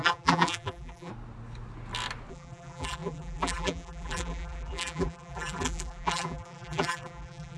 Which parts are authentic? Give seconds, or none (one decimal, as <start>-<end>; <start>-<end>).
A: 1.1-2.3